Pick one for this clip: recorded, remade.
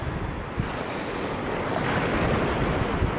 recorded